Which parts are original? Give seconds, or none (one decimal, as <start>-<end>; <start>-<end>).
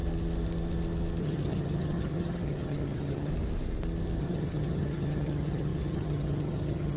0.0-1.2; 3.3-4.2